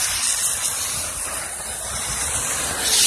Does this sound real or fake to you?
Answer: real